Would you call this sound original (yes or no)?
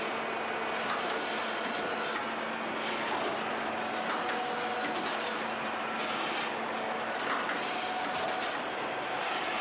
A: yes